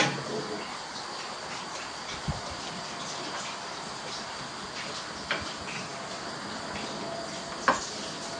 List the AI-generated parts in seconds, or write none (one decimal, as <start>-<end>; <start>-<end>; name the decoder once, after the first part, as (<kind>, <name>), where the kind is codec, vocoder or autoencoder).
none